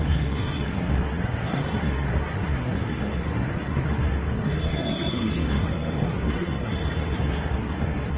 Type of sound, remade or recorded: remade